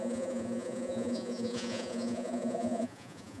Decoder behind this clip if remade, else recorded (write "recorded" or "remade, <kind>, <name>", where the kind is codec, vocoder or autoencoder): remade, vocoder, Vocos